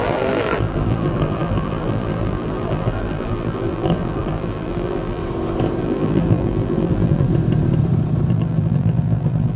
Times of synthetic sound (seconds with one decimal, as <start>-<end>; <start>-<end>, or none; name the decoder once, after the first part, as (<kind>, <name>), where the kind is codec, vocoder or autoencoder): 0.0-5.2 (vocoder, BigVGAN v2); 5.8-7.3; 8.3-9.6